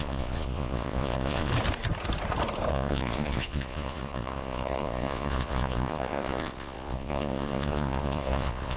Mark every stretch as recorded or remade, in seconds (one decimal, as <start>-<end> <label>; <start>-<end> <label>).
0.0-1.5 remade; 1.5-2.7 recorded; 2.7-8.8 remade